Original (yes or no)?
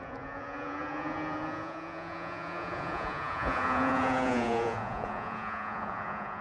no